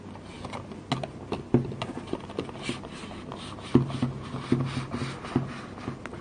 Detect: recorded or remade recorded